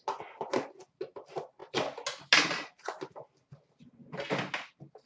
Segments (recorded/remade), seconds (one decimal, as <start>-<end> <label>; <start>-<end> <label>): 0.0-5.1 recorded